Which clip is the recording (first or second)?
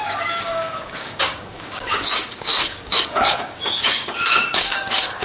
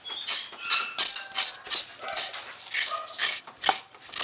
second